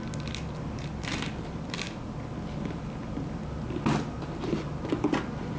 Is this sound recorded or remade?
recorded